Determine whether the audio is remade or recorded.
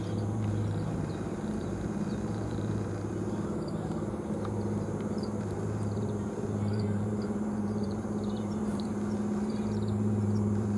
remade